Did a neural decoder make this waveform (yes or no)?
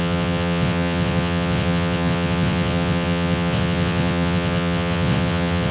yes